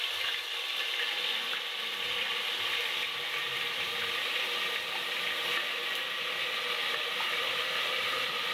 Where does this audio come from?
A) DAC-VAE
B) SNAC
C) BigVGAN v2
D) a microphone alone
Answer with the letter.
D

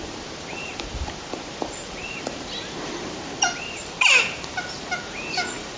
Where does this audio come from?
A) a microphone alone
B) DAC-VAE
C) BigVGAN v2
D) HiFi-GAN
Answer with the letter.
C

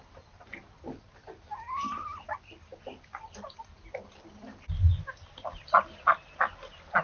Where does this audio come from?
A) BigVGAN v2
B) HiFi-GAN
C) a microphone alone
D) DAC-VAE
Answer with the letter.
C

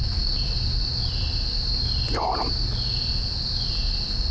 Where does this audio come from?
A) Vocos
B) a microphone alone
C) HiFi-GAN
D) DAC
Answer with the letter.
B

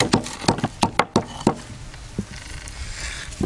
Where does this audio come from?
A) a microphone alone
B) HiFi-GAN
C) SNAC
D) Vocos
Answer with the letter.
A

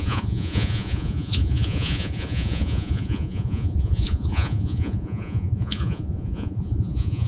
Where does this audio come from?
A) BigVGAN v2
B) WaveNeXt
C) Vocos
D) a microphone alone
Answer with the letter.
C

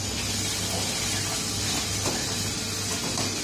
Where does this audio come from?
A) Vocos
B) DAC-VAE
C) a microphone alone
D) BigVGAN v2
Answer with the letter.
C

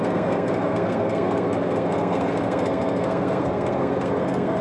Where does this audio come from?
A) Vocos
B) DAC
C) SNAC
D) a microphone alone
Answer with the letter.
C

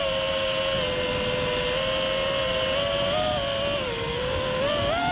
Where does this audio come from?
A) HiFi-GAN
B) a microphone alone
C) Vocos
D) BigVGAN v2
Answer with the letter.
B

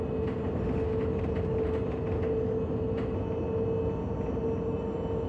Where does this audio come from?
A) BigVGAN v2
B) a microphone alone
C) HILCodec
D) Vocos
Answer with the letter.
B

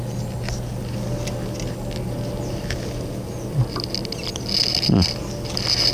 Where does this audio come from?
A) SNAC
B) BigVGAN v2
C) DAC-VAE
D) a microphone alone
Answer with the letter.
D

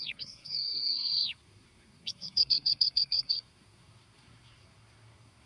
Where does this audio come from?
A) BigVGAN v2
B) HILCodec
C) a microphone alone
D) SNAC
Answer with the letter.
D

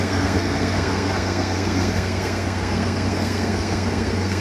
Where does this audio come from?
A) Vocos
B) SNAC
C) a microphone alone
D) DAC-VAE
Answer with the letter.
B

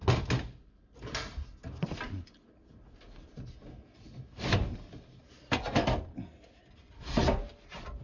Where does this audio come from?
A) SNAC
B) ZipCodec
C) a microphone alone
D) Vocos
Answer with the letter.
C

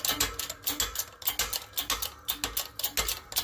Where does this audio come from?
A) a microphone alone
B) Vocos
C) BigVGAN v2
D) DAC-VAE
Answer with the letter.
A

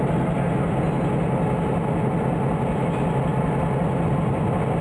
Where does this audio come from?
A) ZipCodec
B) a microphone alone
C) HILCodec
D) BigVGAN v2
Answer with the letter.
B